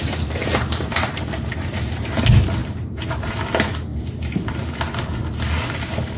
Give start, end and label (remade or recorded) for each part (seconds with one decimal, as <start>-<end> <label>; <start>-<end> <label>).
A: 0.0-0.4 recorded; 0.4-2.2 remade; 2.2-2.6 recorded; 2.6-3.4 remade; 3.4-3.9 recorded; 3.9-4.6 remade; 4.6-6.2 recorded